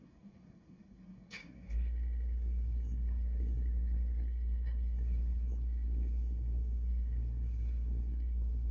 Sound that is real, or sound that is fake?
fake